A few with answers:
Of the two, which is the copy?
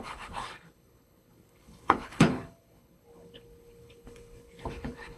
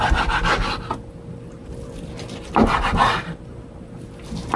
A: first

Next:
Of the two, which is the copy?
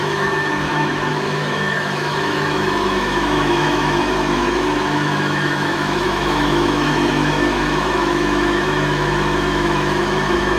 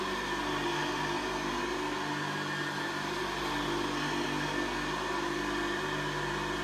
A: first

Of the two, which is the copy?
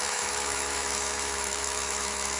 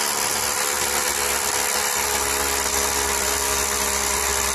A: first